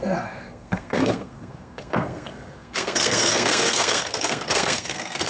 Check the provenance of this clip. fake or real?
fake